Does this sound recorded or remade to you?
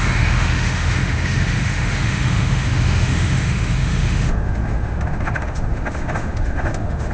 remade